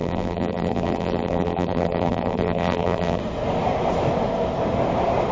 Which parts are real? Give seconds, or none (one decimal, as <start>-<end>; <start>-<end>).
3.2-5.3